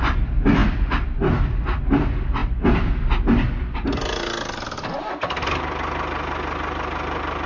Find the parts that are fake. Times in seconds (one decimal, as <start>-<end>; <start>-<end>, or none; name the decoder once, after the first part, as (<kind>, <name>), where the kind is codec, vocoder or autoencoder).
none